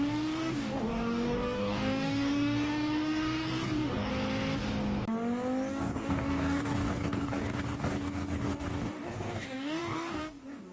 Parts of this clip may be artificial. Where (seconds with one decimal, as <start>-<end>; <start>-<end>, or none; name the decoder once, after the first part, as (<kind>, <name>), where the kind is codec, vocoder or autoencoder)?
0.0-4.1 (codec, DAC); 5.7-10.7